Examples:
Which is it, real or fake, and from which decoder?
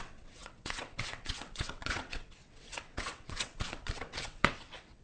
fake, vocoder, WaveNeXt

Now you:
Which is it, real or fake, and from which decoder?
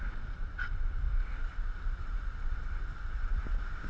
real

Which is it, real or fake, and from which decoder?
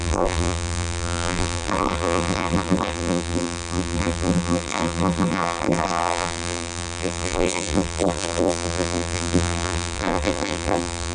fake, vocoder, BigVGAN v2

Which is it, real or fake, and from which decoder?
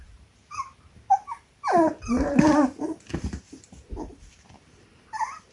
fake, vocoder, BigVGAN v2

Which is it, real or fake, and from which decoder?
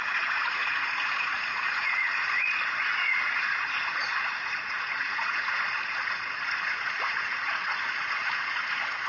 fake, vocoder, Vocos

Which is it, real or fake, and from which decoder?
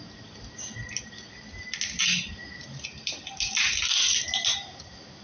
real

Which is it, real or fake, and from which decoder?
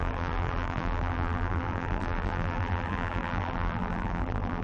fake, vocoder, BigVGAN v2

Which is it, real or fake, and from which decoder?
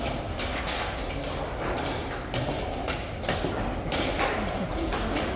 real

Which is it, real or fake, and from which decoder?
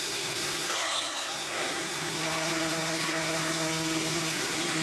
fake, codec, SNAC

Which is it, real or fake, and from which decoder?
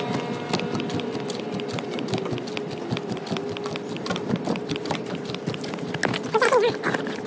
real